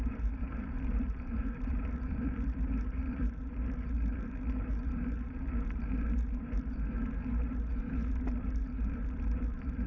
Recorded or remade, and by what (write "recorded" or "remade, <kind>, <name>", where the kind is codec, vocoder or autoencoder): remade, vocoder, BigVGAN v2